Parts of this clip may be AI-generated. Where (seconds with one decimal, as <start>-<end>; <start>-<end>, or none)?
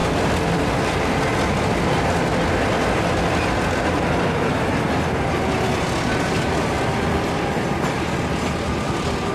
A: none